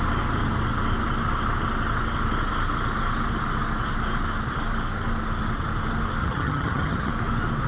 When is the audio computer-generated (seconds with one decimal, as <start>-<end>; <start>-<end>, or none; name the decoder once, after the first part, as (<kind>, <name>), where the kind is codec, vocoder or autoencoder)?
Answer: 6.2-7.1 (vocoder, HiFi-GAN)